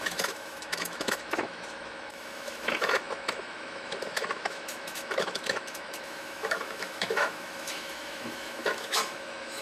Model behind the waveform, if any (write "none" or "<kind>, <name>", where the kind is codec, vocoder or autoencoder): autoencoder, DAC-VAE